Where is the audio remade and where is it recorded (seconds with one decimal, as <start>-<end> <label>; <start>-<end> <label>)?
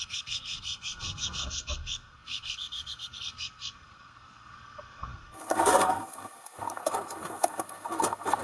0.0-8.4 remade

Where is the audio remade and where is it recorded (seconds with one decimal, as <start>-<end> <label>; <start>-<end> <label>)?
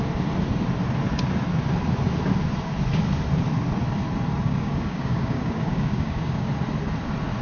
0.0-4.4 recorded; 4.4-6.5 remade; 6.5-7.4 recorded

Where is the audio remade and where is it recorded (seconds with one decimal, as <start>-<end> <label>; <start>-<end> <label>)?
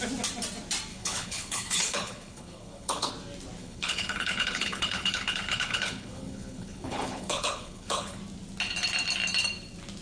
0.0-0.9 recorded; 0.9-3.1 remade; 3.1-3.6 recorded; 3.6-8.2 remade; 8.2-10.0 recorded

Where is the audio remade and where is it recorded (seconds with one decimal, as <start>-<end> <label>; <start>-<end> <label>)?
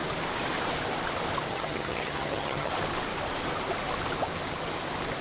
0.0-1.5 recorded; 1.5-2.7 remade; 2.7-5.2 recorded